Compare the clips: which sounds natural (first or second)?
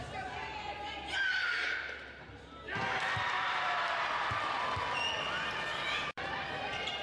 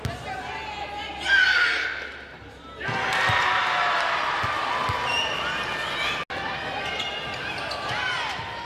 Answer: second